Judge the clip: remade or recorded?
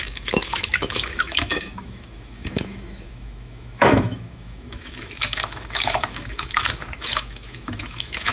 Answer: remade